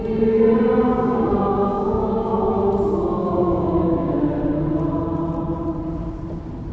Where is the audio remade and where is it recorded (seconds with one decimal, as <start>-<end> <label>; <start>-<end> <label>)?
0.0-0.9 recorded; 0.9-2.5 remade; 2.5-3.2 recorded; 3.2-4.1 remade; 4.1-6.7 recorded